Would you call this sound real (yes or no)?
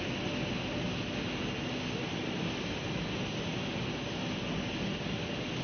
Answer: yes